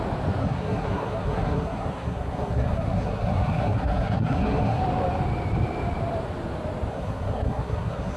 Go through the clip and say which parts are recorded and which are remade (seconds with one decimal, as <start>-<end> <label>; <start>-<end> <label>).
0.0-0.4 recorded; 0.4-4.8 remade; 4.8-6.9 recorded; 6.9-8.2 remade